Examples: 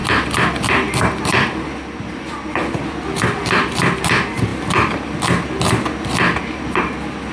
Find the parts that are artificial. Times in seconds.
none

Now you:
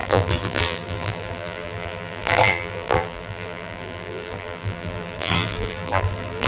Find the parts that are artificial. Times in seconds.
0.0-6.5 (vocoder, BigVGAN v2)